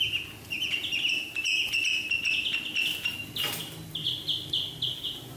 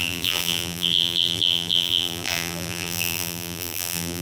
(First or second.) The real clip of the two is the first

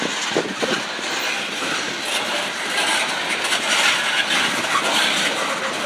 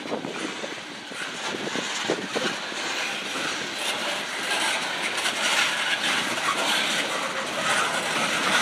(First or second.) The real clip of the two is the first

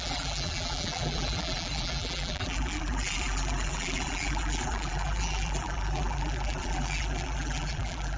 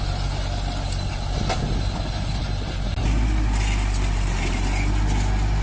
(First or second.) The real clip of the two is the second